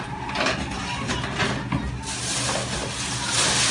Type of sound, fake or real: real